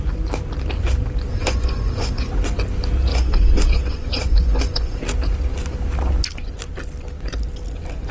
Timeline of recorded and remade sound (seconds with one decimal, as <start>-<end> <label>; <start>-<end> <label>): 0.0-1.3 recorded; 1.3-2.3 remade; 2.3-3.1 recorded; 3.1-5.0 remade; 5.0-8.1 recorded